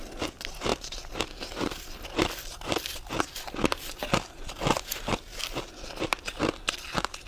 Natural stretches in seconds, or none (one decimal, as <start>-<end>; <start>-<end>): 0.0-0.7; 4.9-7.3